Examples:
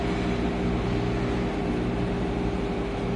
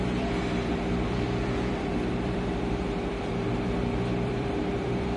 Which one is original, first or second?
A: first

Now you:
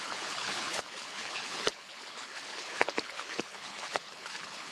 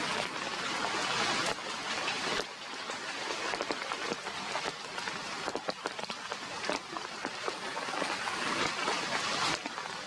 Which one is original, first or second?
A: second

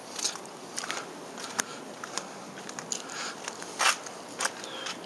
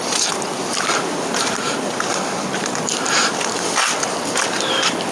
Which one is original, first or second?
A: first